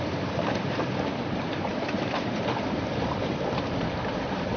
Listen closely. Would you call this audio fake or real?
fake